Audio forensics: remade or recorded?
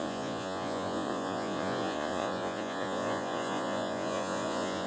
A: remade